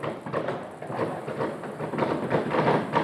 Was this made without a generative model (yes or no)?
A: yes